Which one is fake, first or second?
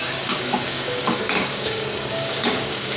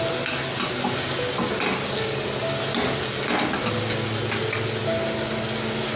first